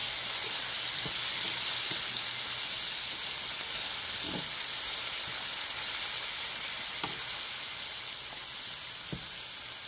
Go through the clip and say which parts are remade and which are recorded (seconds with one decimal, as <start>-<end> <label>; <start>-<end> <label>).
0.0-9.9 recorded